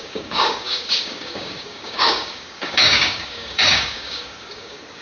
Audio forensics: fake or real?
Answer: fake